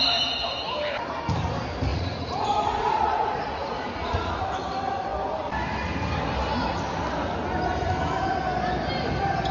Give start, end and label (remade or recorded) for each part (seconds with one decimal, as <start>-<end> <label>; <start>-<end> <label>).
0.0-1.9 recorded; 1.9-4.4 remade; 4.4-9.5 recorded